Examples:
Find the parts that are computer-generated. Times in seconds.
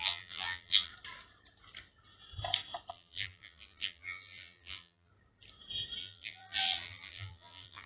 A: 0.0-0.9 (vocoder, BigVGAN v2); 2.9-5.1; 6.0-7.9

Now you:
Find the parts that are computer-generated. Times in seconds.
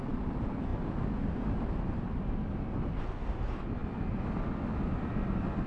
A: none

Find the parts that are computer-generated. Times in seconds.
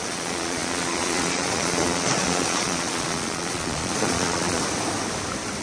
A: 0.0-4.6 (vocoder, Vocos)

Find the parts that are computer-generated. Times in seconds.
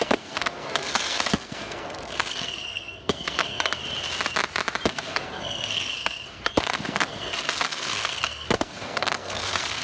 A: 0.0-3.8 (codec, SNAC); 4.9-9.8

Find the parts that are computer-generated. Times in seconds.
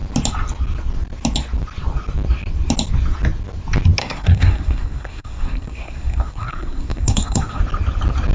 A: 4.0-7.6 (codec, SNAC)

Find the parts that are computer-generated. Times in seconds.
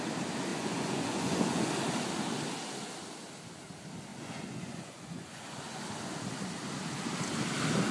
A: 0.5-1.7 (vocoder, Vocos); 4.1-5.8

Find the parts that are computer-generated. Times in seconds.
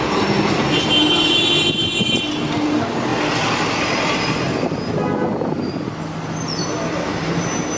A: none